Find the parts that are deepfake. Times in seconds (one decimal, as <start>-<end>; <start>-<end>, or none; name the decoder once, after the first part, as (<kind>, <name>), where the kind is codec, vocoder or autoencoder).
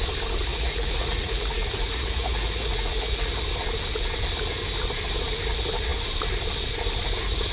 0.5-3.3 (vocoder, Vocos)